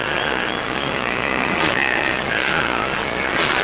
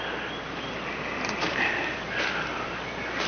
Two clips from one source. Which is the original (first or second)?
second